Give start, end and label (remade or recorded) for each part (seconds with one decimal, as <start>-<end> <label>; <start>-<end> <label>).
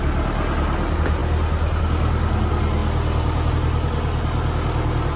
0.0-5.2 recorded